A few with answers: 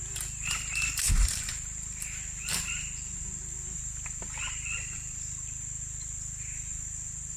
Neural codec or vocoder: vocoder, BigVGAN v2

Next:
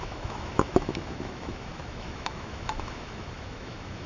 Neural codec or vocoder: autoencoder, DAC-VAE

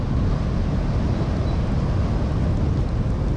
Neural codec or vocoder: none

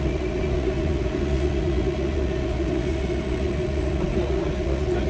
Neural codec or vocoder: vocoder, Vocos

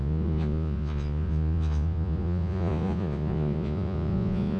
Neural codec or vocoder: vocoder, Vocos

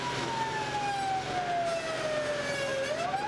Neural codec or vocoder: none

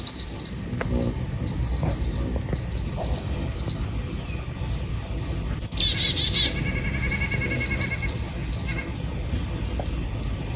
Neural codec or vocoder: none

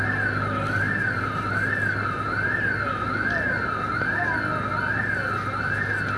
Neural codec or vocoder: none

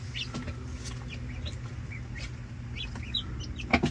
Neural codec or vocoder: none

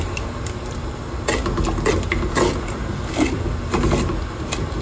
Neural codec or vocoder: none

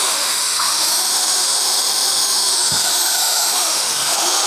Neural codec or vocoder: autoencoder, DAC-VAE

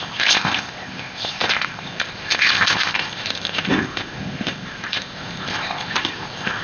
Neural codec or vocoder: codec, ZipCodec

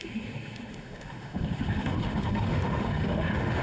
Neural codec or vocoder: autoencoder, DAC-VAE